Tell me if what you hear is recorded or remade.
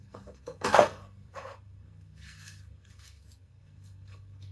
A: remade